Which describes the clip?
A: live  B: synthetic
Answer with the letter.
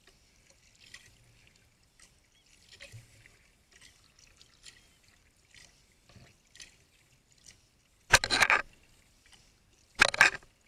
A